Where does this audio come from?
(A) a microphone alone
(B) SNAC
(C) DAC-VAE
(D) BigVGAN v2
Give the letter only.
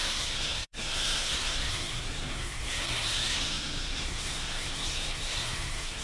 B